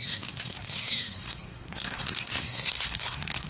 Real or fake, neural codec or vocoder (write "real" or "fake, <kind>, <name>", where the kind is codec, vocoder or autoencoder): fake, codec, SNAC